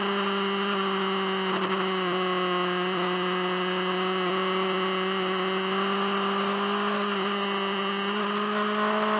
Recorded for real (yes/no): yes